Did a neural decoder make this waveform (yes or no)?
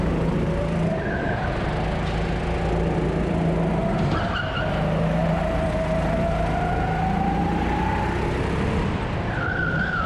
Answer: no